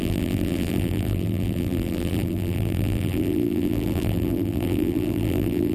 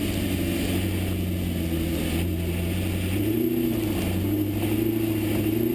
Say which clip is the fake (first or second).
first